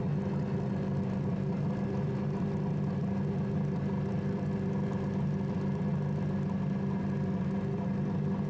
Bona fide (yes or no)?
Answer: yes